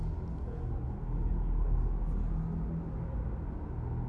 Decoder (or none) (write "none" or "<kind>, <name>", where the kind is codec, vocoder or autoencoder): none